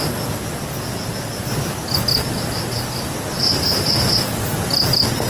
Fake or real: real